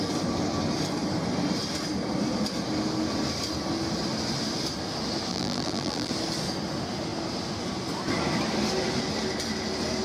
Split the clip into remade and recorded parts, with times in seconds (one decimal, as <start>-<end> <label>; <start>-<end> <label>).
0.0-5.3 recorded; 5.3-6.1 remade; 6.1-10.0 recorded